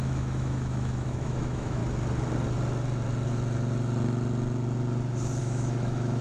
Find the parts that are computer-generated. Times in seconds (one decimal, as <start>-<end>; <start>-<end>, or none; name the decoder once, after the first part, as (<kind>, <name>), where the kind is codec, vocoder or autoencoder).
0.0-1.8 (autoencoder, DAC-VAE); 5.4-6.2